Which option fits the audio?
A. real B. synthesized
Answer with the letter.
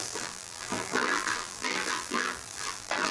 B